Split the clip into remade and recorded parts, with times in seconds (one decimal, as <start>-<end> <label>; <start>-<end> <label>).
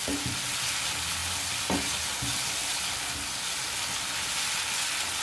0.0-1.2 recorded; 1.2-2.0 remade; 2.0-2.6 recorded; 2.6-3.6 remade; 3.6-5.2 recorded